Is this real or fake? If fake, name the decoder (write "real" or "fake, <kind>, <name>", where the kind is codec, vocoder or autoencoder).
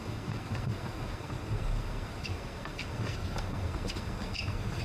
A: fake, codec, SNAC